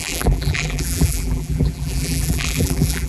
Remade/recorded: remade